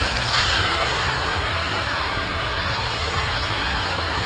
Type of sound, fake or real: fake